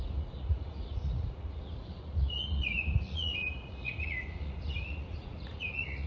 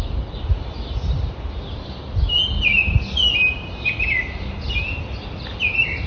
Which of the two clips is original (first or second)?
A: second